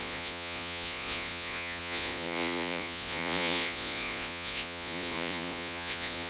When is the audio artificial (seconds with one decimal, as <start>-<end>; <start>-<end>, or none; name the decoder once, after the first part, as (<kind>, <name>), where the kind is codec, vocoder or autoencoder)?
0.0-6.3 (vocoder, Vocos)